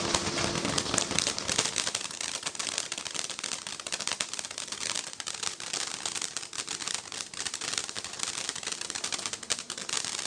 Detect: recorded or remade recorded